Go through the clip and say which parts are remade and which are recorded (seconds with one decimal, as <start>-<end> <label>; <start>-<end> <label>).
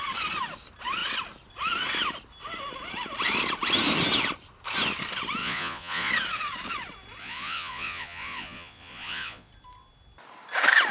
0.0-5.4 recorded; 5.4-6.1 remade; 6.1-7.2 recorded; 7.2-9.5 remade; 9.5-10.9 recorded